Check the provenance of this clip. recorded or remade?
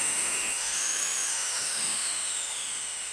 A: remade